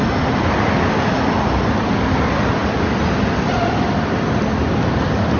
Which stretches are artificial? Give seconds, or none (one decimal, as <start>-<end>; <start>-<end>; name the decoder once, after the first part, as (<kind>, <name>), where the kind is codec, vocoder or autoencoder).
none